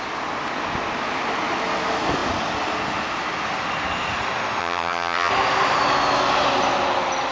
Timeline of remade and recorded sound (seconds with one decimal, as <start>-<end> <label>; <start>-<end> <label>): 0.0-4.6 recorded; 4.6-5.3 remade; 5.3-7.3 recorded